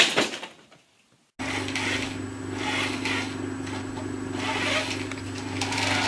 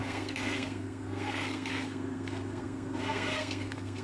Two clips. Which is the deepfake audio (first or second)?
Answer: second